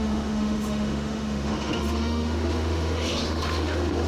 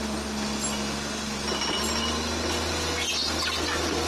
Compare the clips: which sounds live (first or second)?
second